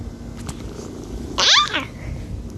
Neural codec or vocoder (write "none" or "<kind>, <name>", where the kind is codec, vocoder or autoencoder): none